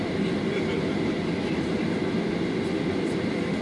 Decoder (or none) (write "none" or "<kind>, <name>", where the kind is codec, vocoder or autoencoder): none